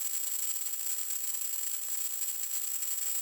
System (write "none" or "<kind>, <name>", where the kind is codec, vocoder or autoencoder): none